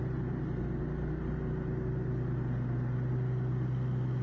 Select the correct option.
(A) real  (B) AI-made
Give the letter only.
A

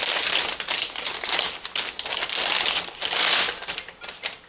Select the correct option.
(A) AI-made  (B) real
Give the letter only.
B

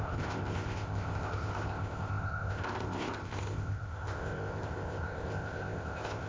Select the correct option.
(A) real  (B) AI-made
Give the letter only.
B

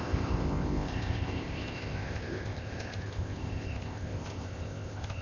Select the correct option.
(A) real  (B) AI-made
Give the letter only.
B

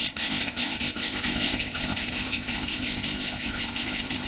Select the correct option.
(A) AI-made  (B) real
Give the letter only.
A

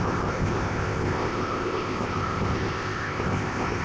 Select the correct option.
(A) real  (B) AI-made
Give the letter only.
B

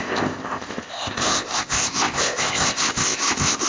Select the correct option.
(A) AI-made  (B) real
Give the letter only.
A